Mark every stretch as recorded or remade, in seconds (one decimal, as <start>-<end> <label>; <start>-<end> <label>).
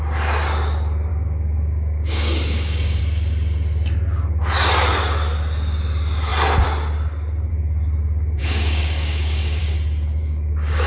0.0-1.1 recorded; 1.1-3.0 remade; 3.0-8.4 recorded; 8.4-9.6 remade; 9.6-10.2 recorded; 10.2-10.9 remade